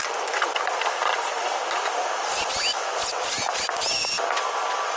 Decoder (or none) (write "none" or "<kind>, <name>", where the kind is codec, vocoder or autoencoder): none